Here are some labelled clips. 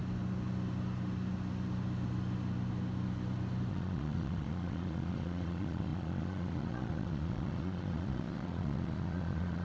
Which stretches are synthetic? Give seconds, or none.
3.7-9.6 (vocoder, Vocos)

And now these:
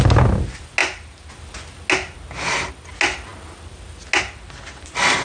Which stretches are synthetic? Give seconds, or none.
none